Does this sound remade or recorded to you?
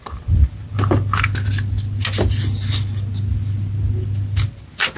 recorded